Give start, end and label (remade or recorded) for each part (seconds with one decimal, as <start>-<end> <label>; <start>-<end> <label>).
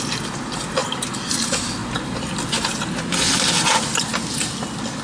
0.0-5.0 recorded